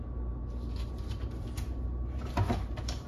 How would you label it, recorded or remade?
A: remade